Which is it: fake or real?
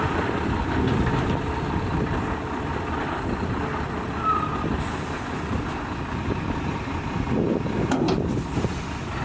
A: real